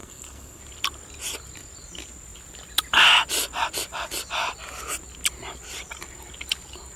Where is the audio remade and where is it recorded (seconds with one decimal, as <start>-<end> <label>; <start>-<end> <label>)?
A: 0.0-0.6 remade; 0.6-7.0 recorded